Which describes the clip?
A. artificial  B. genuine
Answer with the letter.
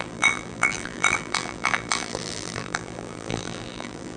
A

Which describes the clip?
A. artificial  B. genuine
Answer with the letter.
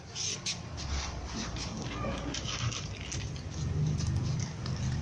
B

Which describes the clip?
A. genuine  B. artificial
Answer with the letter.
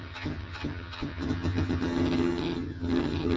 B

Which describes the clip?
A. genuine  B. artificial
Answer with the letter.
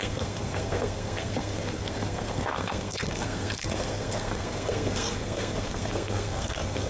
B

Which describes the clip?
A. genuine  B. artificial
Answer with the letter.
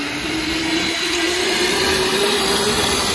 A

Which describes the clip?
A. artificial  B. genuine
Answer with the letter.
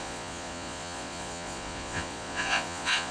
A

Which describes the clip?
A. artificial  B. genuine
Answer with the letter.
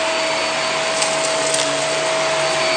B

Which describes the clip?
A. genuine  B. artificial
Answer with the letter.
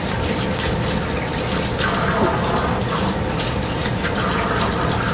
A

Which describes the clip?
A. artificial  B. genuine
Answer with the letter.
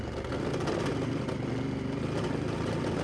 B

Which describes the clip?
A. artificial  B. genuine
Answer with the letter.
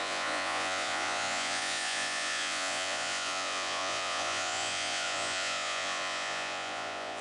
A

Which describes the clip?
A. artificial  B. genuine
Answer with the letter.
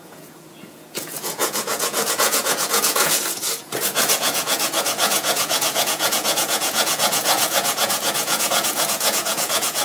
A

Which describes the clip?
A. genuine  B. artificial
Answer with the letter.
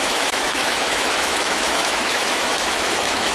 B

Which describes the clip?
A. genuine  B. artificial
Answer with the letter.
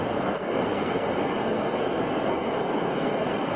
B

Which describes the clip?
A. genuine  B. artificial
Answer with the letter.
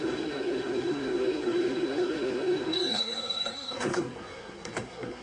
B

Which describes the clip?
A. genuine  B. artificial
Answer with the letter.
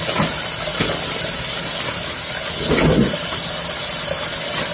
A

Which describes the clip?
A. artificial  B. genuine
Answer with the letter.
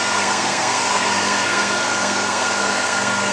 A